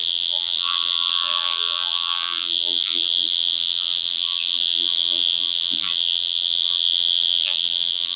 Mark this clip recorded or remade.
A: remade